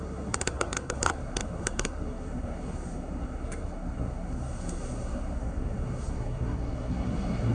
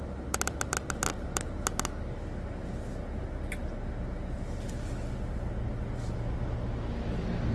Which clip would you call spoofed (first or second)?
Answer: first